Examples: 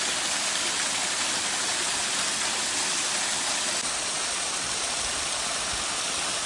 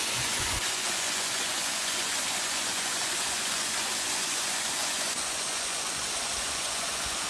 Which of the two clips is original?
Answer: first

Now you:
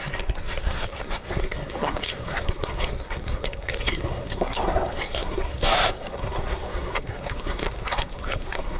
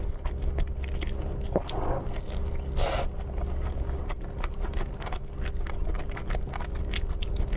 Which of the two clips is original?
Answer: second